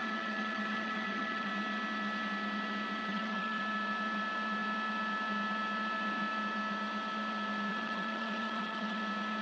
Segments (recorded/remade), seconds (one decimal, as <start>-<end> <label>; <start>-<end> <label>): 0.0-1.5 remade; 1.5-3.1 recorded; 3.1-3.6 remade; 3.6-7.7 recorded; 7.7-9.0 remade; 9.0-9.4 recorded